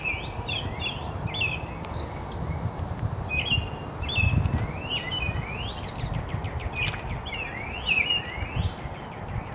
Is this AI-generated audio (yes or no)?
no